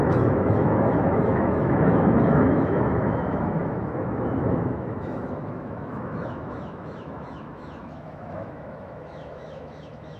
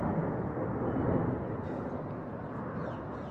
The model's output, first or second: first